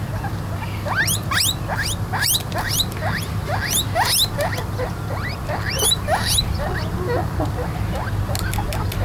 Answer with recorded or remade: recorded